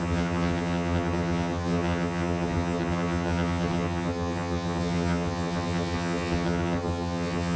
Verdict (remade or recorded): remade